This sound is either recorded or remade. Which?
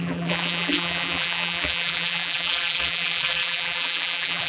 remade